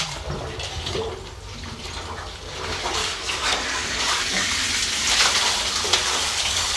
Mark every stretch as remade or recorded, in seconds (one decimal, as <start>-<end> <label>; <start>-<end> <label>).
0.0-3.0 recorded; 3.0-4.5 remade; 4.5-6.0 recorded; 6.0-6.8 remade